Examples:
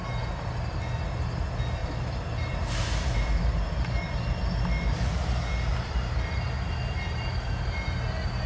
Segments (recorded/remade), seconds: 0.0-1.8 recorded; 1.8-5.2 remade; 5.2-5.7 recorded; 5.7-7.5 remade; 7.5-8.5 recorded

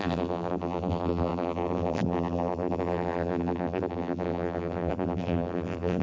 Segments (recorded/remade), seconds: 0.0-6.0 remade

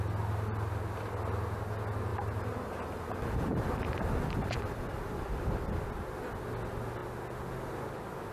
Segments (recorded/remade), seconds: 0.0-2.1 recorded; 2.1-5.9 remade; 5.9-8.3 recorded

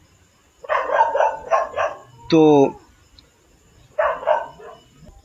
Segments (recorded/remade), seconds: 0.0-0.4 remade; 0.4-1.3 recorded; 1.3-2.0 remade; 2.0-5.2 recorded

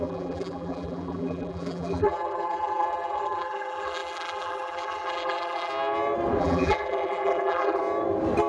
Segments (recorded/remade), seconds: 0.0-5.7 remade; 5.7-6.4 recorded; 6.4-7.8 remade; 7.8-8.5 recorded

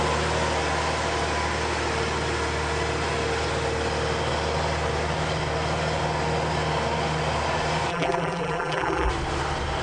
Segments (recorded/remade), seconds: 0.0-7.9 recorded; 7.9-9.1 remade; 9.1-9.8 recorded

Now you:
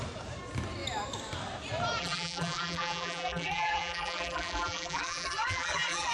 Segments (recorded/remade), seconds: 0.0-2.0 recorded; 2.0-6.1 remade

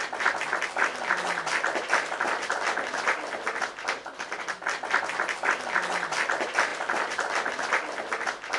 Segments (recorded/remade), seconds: 0.0-8.6 recorded